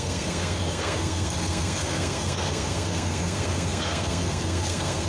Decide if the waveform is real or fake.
fake